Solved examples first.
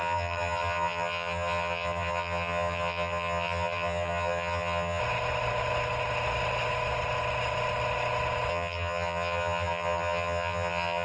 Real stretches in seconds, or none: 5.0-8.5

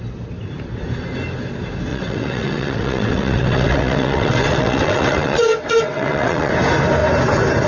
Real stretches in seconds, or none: 0.0-1.9; 6.5-7.7

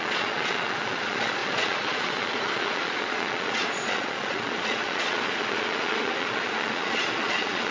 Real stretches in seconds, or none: none

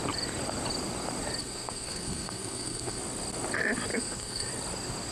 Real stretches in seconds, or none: 0.0-1.4; 3.0-3.9; 4.5-5.1